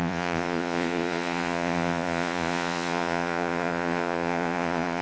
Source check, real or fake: fake